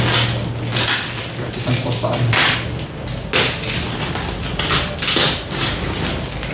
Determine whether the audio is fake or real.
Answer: real